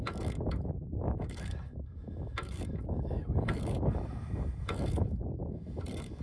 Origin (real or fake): fake